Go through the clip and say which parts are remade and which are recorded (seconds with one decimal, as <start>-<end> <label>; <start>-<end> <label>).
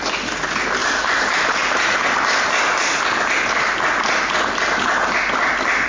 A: 0.0-0.8 recorded; 0.8-2.1 remade; 2.1-5.9 recorded